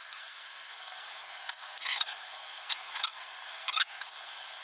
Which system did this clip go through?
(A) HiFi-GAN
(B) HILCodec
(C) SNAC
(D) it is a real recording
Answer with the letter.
C